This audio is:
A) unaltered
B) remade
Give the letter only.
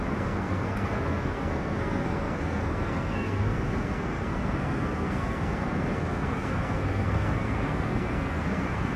B